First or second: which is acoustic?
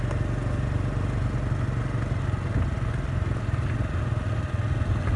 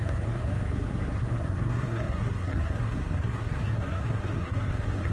first